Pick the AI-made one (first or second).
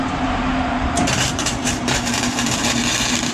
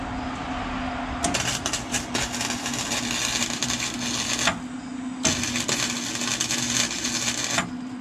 first